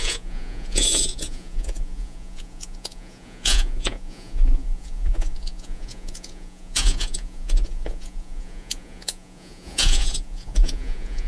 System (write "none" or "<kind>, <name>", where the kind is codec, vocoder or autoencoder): vocoder, Vocos